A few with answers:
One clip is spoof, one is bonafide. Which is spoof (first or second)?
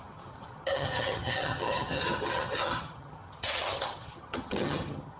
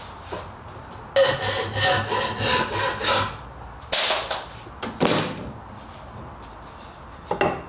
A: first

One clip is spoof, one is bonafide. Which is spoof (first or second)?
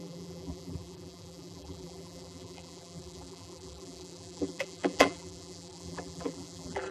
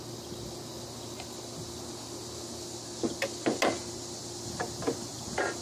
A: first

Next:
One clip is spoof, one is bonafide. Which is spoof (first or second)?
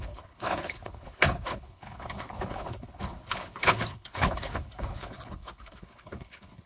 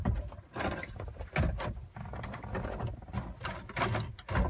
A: first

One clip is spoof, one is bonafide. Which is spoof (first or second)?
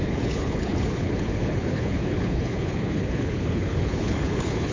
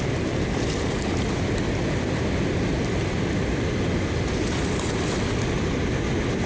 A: first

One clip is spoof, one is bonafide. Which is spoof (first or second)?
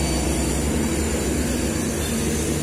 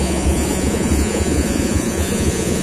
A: second